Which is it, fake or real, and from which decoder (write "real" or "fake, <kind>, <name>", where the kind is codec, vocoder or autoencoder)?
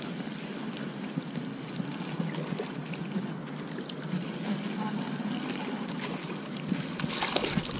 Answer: real